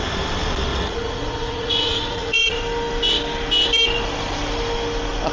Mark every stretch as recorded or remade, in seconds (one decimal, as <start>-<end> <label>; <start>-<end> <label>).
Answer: 0.0-0.7 recorded; 0.7-2.6 remade; 2.6-5.3 recorded

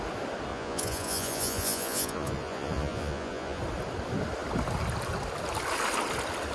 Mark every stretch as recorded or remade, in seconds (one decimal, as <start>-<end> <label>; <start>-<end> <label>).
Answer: 0.0-0.5 recorded; 0.5-3.6 remade; 3.6-6.5 recorded

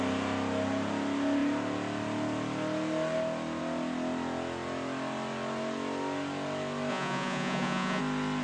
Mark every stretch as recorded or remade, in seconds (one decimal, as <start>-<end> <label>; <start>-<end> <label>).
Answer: 0.0-6.9 recorded; 6.9-8.0 remade; 8.0-8.4 recorded

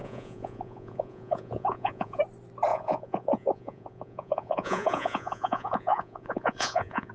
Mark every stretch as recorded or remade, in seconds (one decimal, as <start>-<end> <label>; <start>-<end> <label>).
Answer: 0.0-2.2 remade; 2.2-2.7 recorded; 2.7-7.1 remade